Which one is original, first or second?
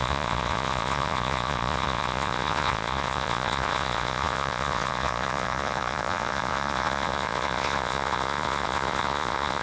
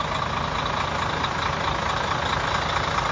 second